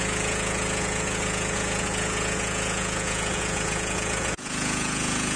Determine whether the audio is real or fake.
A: fake